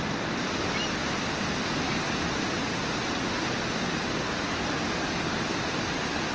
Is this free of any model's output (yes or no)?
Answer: yes